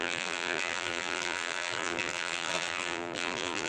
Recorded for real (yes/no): no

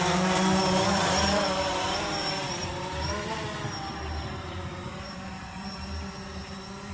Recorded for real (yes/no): no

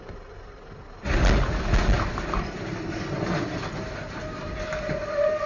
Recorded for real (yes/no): yes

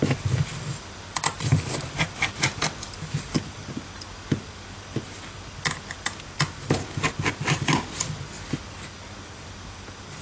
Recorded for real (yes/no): yes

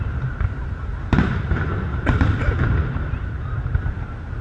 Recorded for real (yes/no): no